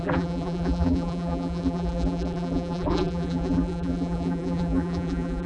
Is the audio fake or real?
fake